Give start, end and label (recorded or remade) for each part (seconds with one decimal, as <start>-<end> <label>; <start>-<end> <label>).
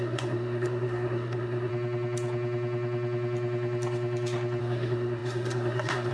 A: 0.0-1.7 remade; 1.7-4.6 recorded; 4.6-6.1 remade